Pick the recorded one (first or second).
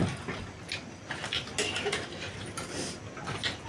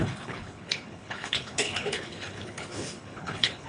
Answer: first